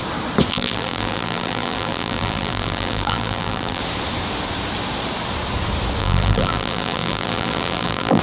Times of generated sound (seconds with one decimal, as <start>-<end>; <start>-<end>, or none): 0.5-3.8; 6.0-8.2